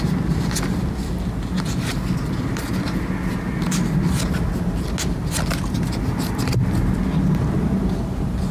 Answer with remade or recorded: recorded